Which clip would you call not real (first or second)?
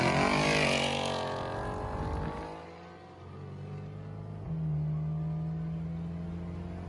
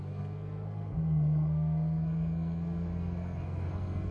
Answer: second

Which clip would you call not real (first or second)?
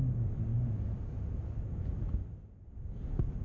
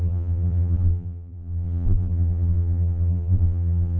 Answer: second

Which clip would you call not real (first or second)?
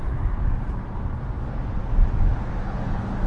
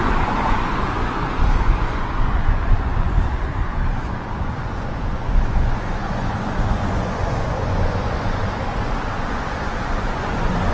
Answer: second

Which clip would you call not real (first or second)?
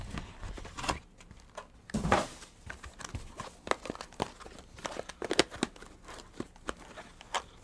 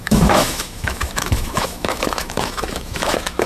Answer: second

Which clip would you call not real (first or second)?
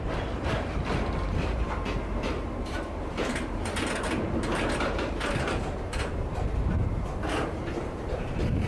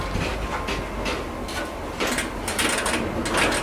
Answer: first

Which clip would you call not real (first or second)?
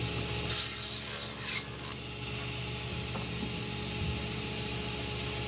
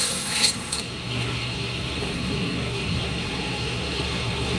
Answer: second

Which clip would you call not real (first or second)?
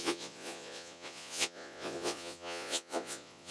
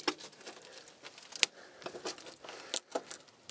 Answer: first